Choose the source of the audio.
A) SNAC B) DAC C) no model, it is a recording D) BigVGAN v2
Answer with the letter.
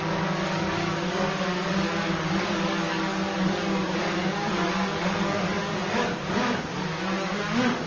B